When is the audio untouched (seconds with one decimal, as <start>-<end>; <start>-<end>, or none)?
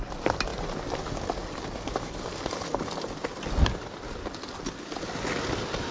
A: 0.0-5.9